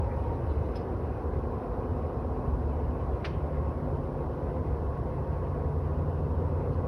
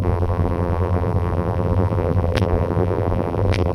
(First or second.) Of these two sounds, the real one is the first